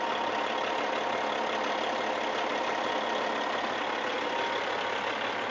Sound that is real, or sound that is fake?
real